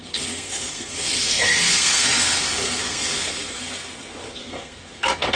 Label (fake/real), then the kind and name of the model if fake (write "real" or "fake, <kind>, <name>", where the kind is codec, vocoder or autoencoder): fake, codec, SNAC